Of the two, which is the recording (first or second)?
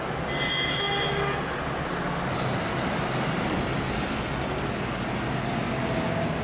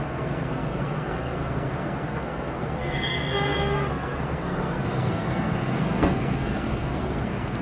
first